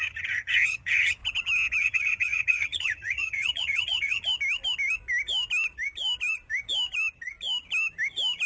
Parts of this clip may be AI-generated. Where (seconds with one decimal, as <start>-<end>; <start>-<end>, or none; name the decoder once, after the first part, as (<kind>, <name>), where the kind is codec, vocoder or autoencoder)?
0.0-1.2 (vocoder, HiFi-GAN); 1.8-4.3